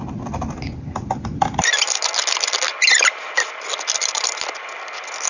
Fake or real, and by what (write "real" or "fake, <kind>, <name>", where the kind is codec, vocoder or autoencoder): fake, vocoder, BigVGAN v2